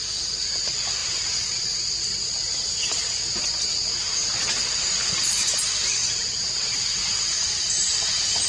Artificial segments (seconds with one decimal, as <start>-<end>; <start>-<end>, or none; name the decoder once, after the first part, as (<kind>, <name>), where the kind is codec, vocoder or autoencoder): 1.0-1.6 (vocoder, BigVGAN v2); 6.0-8.0